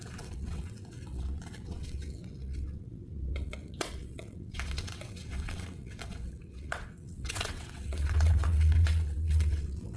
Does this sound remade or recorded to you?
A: remade